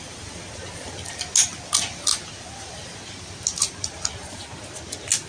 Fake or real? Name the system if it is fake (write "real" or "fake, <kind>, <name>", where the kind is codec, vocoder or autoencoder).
real